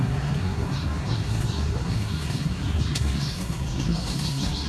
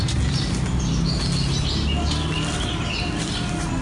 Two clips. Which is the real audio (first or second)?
second